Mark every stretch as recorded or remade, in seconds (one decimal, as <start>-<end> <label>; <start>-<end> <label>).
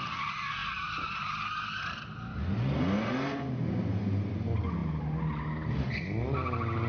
0.0-6.9 recorded